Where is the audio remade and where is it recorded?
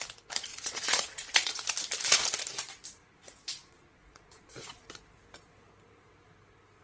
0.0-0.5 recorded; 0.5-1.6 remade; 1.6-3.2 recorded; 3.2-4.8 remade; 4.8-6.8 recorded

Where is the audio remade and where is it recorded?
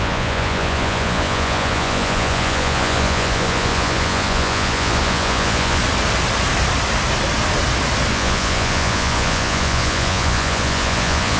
0.0-5.8 remade; 5.8-8.1 recorded; 8.1-11.4 remade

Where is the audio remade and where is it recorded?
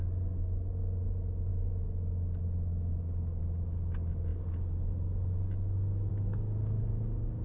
0.0-7.4 recorded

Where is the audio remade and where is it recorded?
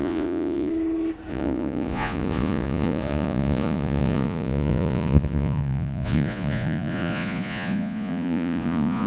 0.0-0.7 remade; 0.7-1.3 recorded; 1.3-9.1 remade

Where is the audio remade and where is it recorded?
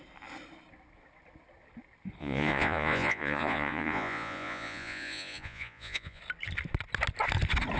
0.0-2.2 recorded; 2.2-6.2 remade; 6.2-7.8 recorded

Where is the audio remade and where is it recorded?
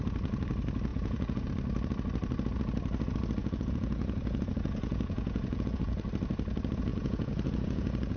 0.0-0.9 recorded; 0.9-1.5 remade; 1.5-3.4 recorded; 3.4-6.0 remade; 6.0-6.9 recorded; 6.9-8.2 remade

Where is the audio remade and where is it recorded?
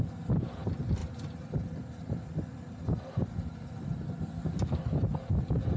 0.0-5.8 recorded